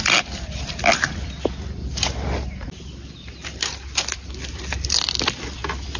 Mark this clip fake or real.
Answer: real